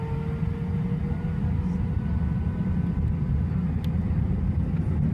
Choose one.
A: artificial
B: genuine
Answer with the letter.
B